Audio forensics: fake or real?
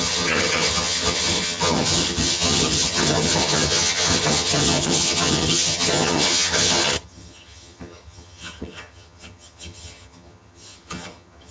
fake